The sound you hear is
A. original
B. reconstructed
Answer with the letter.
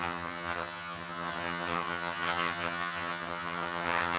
B